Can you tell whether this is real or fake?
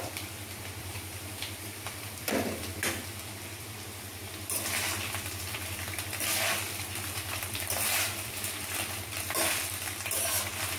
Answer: fake